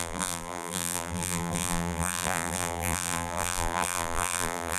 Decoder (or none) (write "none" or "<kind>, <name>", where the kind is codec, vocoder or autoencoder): vocoder, BigVGAN v2